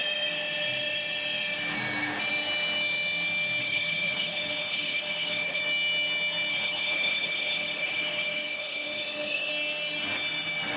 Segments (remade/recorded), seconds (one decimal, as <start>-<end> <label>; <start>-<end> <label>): 0.0-3.6 recorded; 3.6-5.6 remade; 5.6-6.5 recorded; 6.5-9.5 remade; 9.5-10.8 recorded